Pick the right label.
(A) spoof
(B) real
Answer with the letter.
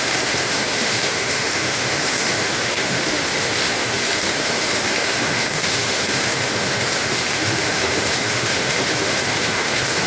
A